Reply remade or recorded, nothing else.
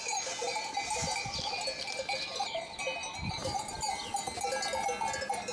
recorded